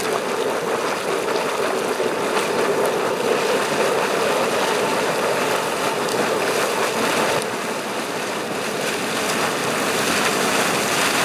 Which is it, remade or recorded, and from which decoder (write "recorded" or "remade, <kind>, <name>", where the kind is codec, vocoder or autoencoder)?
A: recorded